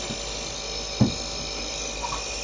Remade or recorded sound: recorded